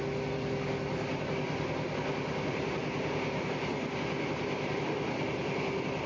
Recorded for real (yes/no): yes